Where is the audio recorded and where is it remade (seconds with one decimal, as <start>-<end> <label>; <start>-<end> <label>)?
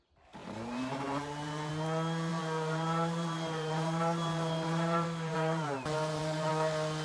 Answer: 0.0-0.4 recorded; 0.4-1.7 remade; 1.7-2.3 recorded; 2.3-6.5 remade; 6.5-7.0 recorded